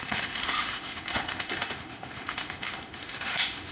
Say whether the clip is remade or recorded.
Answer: remade